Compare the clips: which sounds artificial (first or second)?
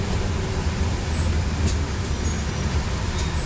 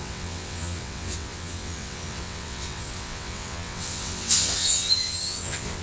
second